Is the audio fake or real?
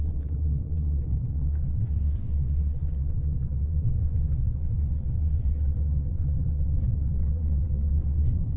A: fake